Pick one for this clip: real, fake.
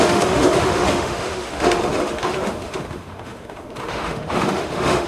fake